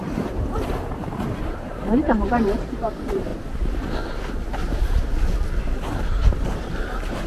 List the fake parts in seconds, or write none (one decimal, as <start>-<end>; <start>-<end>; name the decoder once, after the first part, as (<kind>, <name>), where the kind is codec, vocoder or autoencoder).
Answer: 0.0-3.3 (vocoder, BigVGAN v2); 5.6-7.3